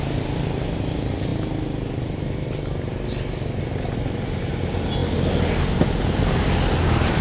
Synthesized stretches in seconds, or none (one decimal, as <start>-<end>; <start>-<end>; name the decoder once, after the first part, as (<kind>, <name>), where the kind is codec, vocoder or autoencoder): none